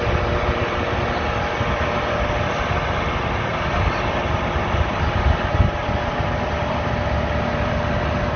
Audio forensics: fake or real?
real